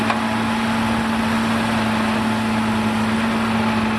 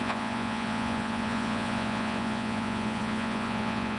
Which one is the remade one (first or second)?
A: second